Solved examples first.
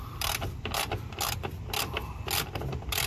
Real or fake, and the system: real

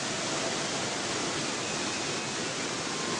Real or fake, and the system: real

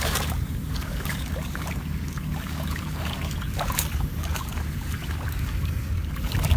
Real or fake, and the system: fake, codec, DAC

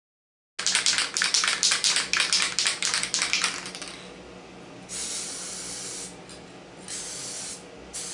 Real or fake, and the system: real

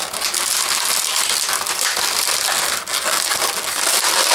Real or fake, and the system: real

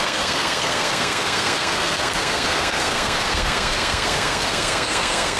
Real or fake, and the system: fake, codec, SNAC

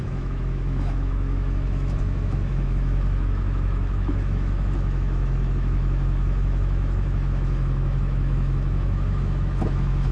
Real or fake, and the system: fake, autoencoder, DAC-VAE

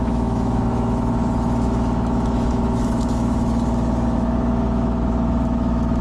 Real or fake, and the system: fake, autoencoder, DAC-VAE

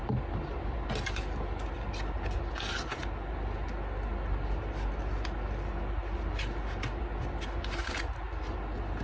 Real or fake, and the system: real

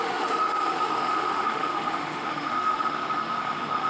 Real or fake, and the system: fake, autoencoder, DAC-VAE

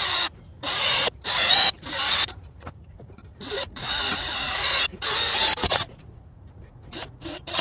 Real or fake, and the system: fake, vocoder, Vocos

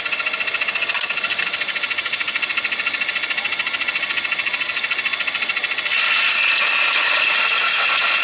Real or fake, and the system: real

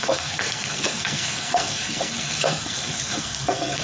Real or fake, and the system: fake, codec, SNAC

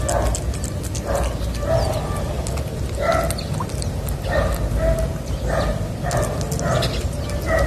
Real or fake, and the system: real